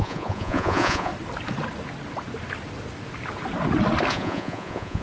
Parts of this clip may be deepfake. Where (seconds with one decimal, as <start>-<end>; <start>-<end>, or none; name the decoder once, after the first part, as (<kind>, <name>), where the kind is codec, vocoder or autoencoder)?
0.0-1.1 (vocoder, Vocos); 4.1-5.0